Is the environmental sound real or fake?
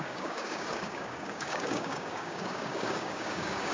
fake